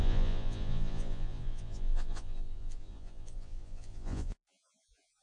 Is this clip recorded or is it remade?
remade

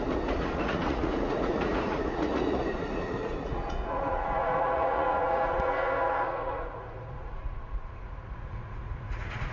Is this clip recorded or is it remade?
remade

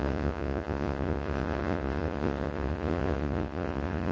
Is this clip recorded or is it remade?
remade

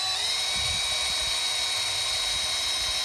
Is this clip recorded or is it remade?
recorded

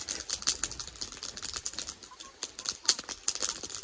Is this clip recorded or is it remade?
recorded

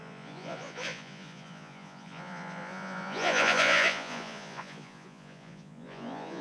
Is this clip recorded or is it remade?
remade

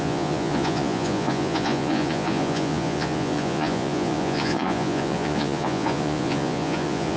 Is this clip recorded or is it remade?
remade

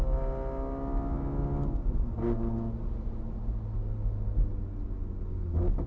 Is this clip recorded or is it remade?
recorded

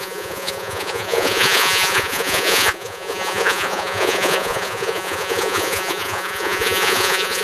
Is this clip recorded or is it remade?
remade